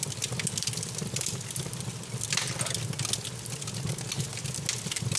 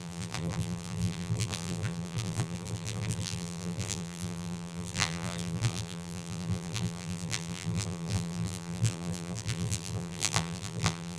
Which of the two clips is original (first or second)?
first